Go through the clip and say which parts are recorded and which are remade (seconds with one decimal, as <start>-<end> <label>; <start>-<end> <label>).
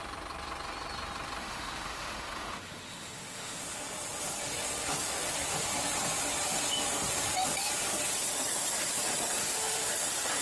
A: 0.0-1.4 recorded; 1.4-3.6 remade; 3.6-9.4 recorded; 9.4-9.9 remade; 9.9-10.4 recorded